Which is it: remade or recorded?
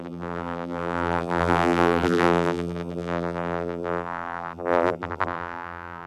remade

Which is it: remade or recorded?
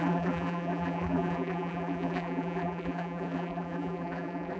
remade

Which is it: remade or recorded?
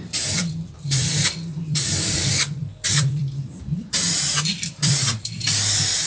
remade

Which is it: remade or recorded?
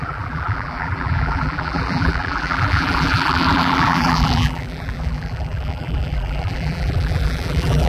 remade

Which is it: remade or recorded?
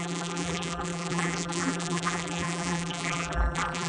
remade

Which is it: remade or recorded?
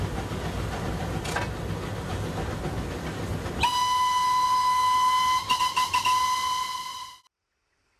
recorded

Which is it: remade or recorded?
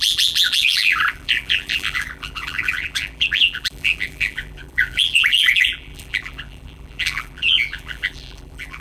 remade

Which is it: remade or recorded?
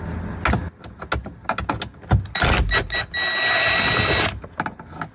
recorded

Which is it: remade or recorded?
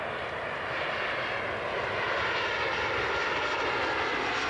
recorded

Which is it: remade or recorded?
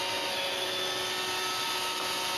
recorded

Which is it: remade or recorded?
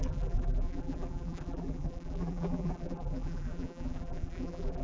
remade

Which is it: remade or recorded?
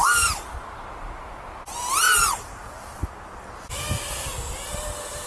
recorded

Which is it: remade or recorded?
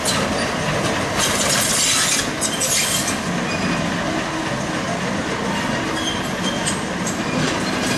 recorded